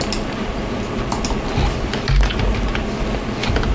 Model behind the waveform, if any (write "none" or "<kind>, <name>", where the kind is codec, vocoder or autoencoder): none